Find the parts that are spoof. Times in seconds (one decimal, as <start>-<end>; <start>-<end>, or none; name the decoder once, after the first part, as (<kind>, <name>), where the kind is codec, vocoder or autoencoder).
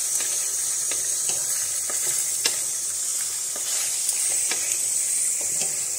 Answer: 0.9-6.0 (vocoder, BigVGAN v2)